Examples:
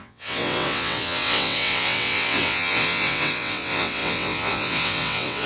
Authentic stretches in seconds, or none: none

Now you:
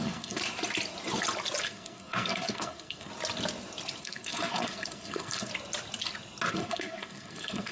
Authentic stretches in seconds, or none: 0.4-1.6; 3.1-4.0; 5.5-6.5

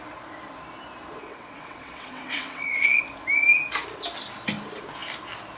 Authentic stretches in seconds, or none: 0.0-1.2; 3.0-5.6

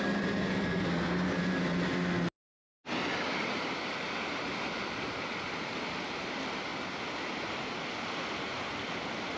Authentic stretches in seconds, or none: 0.0-0.5; 1.4-9.4